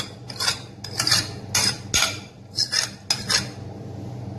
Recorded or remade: recorded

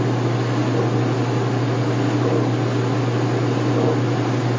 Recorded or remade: recorded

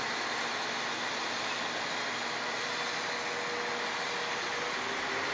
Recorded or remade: recorded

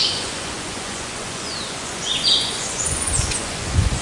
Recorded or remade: remade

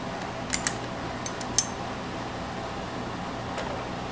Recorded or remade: recorded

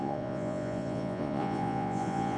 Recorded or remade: remade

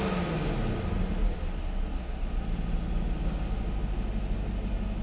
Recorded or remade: recorded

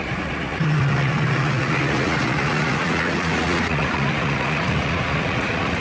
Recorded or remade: remade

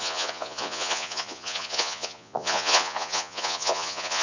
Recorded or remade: remade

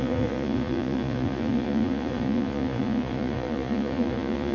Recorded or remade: remade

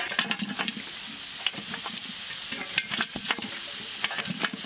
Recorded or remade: recorded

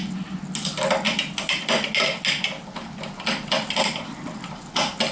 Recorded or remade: recorded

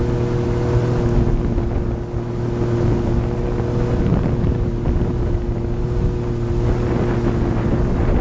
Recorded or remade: recorded